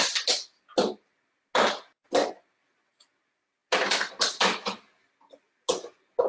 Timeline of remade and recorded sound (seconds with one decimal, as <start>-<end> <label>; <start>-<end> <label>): 0.0-6.3 recorded